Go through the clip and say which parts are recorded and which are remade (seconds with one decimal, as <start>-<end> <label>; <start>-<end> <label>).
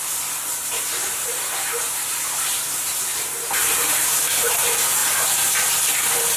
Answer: 0.0-1.0 recorded; 1.0-4.5 remade; 4.5-6.4 recorded